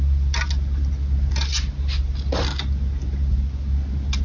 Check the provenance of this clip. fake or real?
real